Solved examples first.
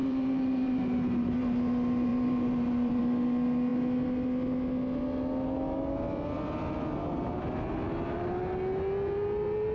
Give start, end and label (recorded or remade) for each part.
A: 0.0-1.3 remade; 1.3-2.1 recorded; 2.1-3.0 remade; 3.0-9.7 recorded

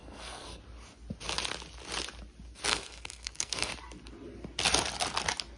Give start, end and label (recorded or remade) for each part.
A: 0.0-0.6 remade; 0.6-2.7 recorded; 2.7-3.7 remade; 3.7-5.6 recorded

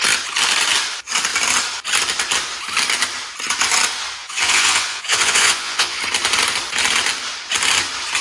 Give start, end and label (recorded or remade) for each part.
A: 0.0-4.2 recorded; 4.2-6.0 remade; 6.0-8.2 recorded

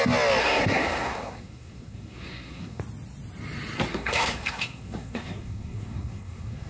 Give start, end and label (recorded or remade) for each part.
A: 0.0-0.4 recorded; 0.4-2.8 remade; 2.8-3.9 recorded; 3.9-6.7 remade